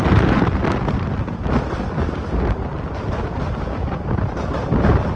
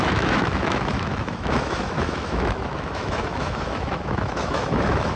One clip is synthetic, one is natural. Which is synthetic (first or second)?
second